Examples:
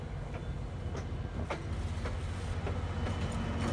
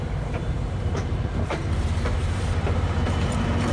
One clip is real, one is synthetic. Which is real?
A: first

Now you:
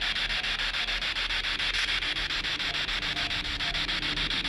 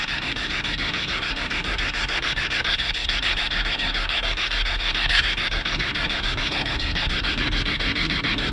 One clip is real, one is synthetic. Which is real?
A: first